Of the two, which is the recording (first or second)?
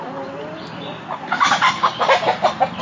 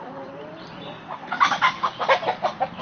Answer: first